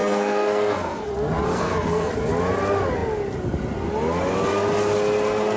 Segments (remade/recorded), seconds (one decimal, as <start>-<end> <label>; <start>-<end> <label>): 0.0-1.1 remade; 1.1-1.5 recorded; 1.5-2.1 remade; 2.1-5.6 recorded